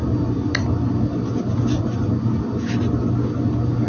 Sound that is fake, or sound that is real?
real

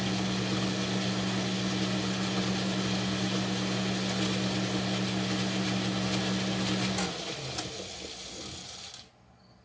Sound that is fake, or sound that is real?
real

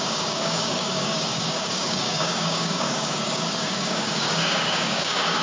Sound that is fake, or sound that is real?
fake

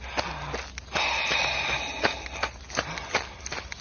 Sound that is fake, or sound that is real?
real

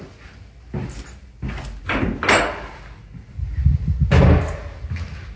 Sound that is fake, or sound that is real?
real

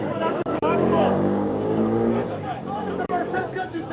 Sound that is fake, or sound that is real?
fake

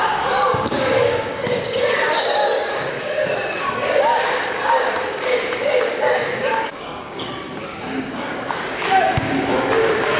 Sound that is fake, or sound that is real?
fake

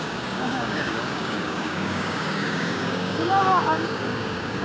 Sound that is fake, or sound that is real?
fake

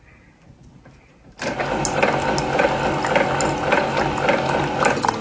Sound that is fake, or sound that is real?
real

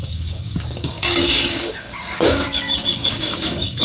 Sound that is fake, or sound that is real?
fake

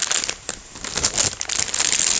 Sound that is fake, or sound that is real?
real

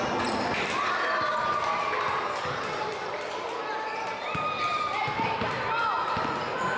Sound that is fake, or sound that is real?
real